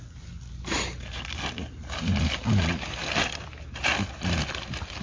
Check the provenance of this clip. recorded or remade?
recorded